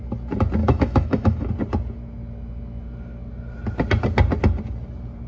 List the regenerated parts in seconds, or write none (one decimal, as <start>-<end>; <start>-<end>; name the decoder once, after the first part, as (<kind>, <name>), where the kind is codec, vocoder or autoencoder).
0.6-1.5 (autoencoder, DAC-VAE)